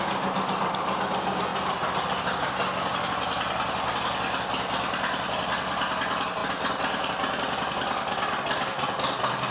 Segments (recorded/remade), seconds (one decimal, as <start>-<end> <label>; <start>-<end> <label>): 0.0-9.5 recorded